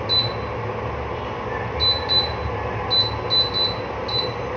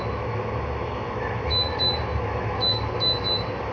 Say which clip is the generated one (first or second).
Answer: second